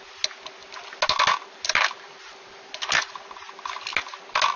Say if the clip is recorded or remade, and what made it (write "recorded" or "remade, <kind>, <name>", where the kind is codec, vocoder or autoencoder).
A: recorded